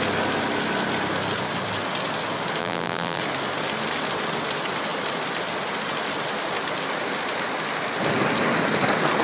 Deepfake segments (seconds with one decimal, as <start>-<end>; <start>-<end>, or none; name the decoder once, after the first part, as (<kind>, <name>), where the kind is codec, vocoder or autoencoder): 2.6-3.2 (vocoder, BigVGAN v2)

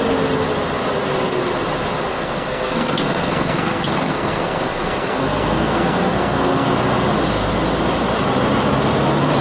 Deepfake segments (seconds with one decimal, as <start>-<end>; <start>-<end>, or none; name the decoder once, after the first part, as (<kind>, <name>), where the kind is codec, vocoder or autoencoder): 2.1-6.7 (codec, SNAC)

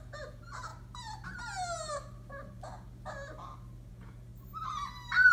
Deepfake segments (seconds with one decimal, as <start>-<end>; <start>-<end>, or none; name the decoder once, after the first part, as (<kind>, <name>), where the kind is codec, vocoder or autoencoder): 0.0-0.7 (vocoder, Vocos); 3.9-4.3

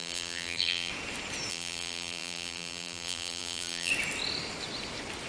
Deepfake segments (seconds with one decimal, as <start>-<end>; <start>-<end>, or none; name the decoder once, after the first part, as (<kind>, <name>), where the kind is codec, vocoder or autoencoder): 0.0-0.9 (vocoder, BigVGAN v2); 1.5-3.9

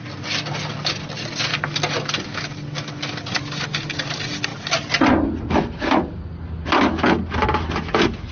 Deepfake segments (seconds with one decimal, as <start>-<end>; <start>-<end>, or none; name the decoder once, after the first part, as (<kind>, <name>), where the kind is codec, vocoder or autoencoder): none

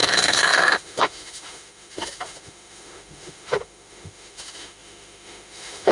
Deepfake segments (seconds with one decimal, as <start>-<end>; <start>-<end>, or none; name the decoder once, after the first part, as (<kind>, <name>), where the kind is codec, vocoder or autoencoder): 0.0-5.9 (autoencoder, DAC-VAE)

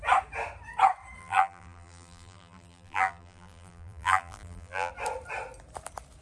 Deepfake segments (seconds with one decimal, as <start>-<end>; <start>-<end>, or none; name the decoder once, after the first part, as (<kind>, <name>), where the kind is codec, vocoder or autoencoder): 1.2-4.9 (vocoder, BigVGAN v2)

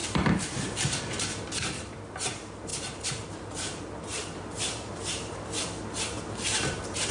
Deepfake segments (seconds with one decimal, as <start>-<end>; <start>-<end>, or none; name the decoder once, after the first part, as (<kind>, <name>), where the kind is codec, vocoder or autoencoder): 0.0-1.0 (vocoder, BigVGAN v2); 2.7-7.1